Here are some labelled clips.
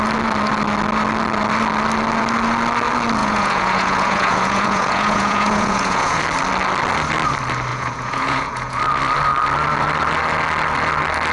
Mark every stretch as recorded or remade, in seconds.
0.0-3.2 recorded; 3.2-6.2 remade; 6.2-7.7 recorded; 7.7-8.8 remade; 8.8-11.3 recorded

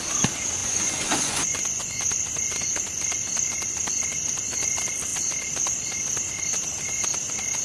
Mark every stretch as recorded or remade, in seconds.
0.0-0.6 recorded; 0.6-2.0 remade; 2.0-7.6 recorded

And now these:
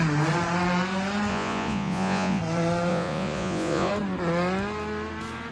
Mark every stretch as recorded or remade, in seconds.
0.0-1.3 recorded; 1.3-2.4 remade; 2.4-2.9 recorded; 2.9-3.9 remade; 3.9-5.5 recorded

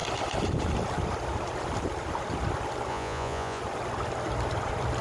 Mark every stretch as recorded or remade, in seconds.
0.0-2.9 recorded; 2.9-3.6 remade; 3.6-5.0 recorded